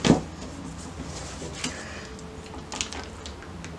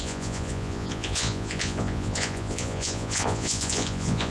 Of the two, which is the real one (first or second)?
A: first